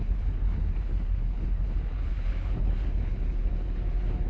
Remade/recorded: remade